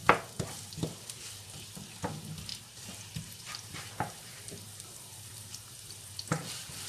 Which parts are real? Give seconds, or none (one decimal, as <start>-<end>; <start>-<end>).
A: 0.7-2.5